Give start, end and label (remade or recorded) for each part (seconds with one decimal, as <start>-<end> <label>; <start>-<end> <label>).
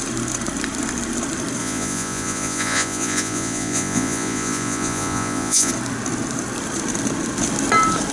0.0-1.6 recorded; 1.6-5.7 remade; 5.7-8.1 recorded